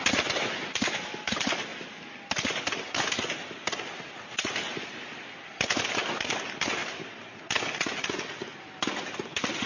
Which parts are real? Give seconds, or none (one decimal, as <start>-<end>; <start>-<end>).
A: 0.0-9.7